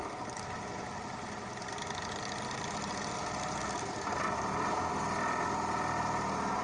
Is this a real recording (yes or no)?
yes